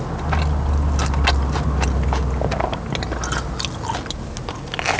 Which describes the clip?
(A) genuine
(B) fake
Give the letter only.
A